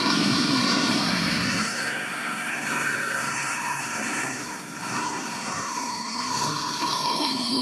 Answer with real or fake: fake